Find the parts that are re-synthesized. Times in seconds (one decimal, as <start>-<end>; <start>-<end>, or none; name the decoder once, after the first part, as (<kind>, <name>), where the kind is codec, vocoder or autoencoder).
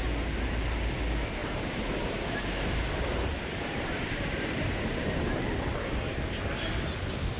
1.4-4.9 (vocoder, BigVGAN v2)